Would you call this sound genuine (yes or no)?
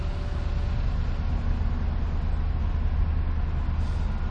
yes